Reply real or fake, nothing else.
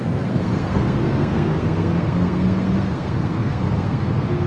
fake